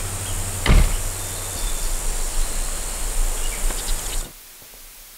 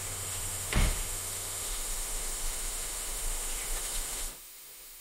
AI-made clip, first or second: second